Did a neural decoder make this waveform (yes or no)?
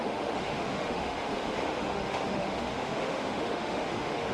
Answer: yes